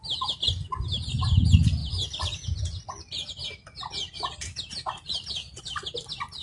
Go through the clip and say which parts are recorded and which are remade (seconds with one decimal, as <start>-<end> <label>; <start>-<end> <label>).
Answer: 0.0-6.4 recorded